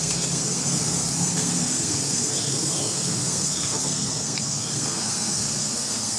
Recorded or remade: remade